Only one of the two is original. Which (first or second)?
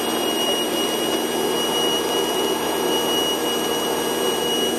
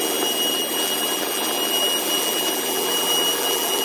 first